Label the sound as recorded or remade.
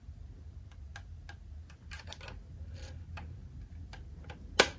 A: recorded